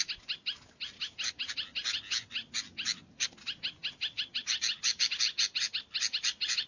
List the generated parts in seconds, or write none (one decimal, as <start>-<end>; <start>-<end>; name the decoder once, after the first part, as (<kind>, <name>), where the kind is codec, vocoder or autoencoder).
none